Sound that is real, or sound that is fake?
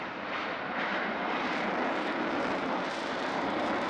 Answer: fake